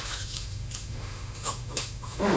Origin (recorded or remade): remade